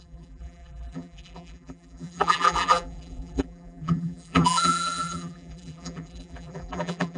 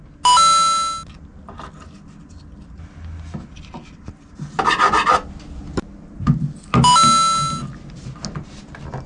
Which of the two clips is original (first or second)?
second